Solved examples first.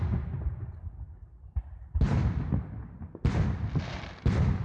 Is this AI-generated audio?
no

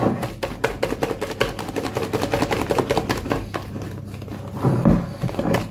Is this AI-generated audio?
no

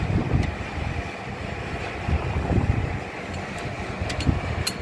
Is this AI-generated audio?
no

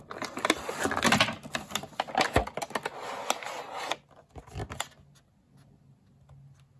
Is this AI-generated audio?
no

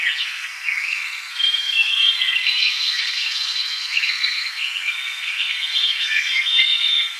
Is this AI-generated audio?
yes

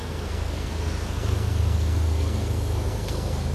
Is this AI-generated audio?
yes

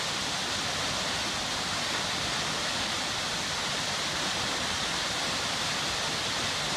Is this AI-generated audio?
no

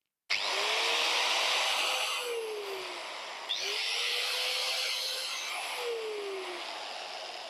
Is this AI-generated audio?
no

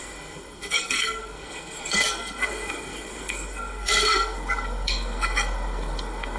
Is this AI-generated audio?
yes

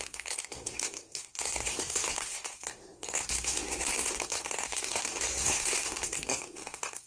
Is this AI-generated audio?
yes